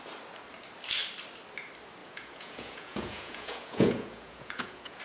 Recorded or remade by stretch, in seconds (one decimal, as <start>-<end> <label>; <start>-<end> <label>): 0.0-2.0 recorded; 2.0-5.0 remade